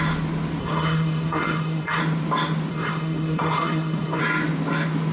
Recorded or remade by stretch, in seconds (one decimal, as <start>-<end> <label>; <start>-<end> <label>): 0.0-0.6 recorded; 0.6-2.0 remade; 2.0-2.7 recorded; 2.7-4.2 remade; 4.2-5.1 recorded